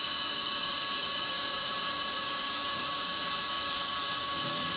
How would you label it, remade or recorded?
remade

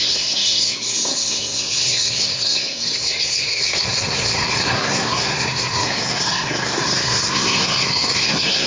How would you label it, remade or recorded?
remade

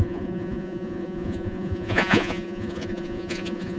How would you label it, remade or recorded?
remade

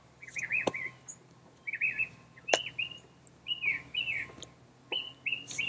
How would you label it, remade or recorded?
recorded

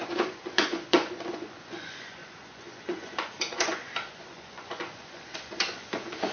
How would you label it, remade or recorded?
remade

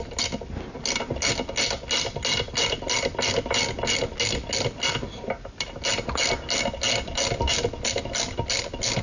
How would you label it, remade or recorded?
recorded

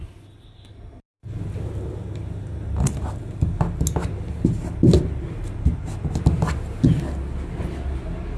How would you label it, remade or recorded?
recorded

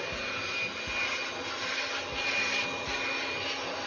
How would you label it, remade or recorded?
recorded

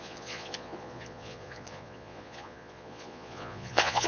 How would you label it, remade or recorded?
remade